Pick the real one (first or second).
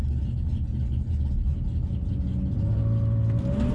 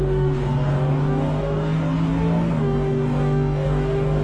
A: first